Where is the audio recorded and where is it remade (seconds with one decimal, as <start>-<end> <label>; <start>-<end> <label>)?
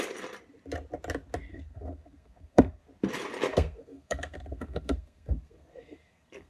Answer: 0.0-1.5 recorded; 1.5-2.8 remade; 2.8-3.5 recorded; 3.5-6.5 remade